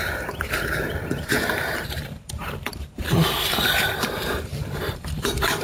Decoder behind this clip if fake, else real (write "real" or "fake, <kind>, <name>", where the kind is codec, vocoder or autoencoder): fake, vocoder, BigVGAN v2